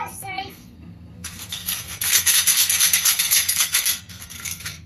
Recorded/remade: remade